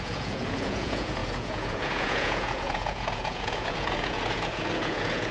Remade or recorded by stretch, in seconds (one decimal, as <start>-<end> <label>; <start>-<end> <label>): 0.0-5.3 remade